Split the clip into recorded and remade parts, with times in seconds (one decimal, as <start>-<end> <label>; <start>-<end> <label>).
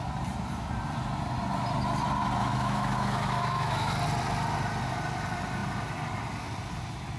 0.0-2.4 recorded; 2.4-3.9 remade; 3.9-7.2 recorded